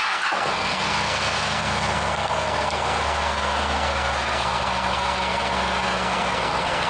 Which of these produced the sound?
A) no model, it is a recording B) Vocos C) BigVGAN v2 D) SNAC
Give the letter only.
D